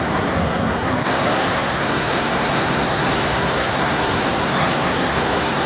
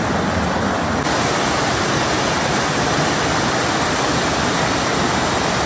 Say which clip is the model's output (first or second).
first